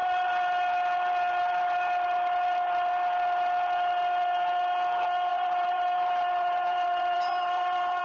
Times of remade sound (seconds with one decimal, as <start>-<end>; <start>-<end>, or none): 5.3-8.0